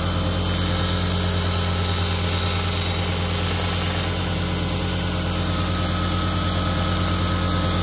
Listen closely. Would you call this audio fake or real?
real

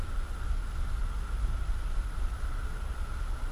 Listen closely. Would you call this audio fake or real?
real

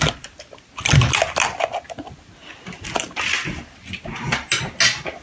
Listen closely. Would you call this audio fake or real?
real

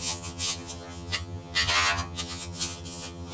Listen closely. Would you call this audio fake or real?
fake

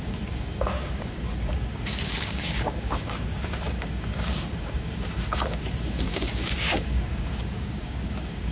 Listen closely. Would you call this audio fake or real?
fake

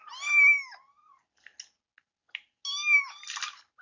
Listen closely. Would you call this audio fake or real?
real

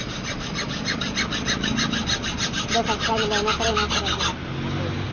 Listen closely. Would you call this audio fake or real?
real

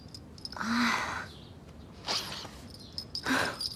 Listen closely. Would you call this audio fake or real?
real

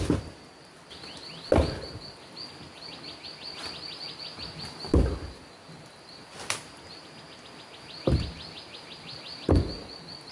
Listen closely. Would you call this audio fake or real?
real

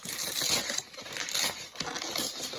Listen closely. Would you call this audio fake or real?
real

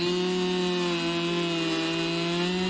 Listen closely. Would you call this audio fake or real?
real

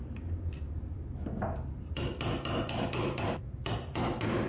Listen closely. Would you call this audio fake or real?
fake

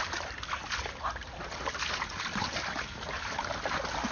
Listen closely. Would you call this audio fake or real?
real